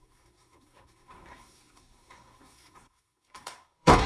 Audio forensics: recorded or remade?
remade